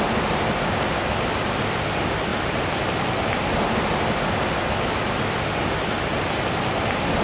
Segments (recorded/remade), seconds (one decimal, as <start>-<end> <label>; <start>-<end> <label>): 0.0-7.2 recorded